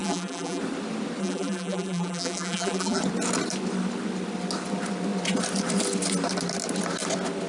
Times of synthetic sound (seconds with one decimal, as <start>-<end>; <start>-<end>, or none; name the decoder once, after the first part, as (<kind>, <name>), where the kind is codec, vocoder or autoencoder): 0.0-0.6 (vocoder, BigVGAN v2); 1.2-3.0